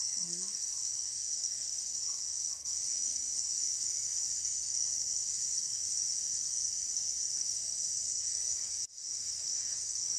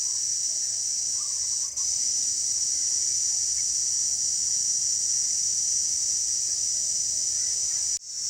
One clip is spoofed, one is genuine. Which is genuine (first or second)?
second